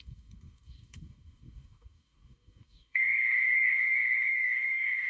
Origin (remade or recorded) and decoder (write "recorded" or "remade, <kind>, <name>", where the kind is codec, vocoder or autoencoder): remade, codec, DAC